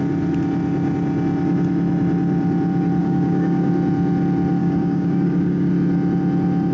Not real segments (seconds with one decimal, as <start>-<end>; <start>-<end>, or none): 3.0-3.7; 4.6-5.7